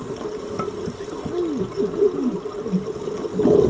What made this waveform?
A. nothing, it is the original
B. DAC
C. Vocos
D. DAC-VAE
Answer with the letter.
A